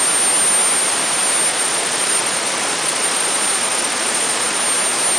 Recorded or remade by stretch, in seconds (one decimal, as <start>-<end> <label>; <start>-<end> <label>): 0.0-1.5 recorded; 1.5-4.6 remade; 4.6-5.2 recorded